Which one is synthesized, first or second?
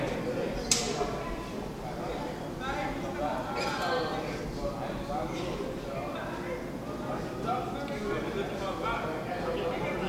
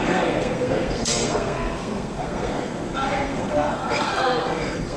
second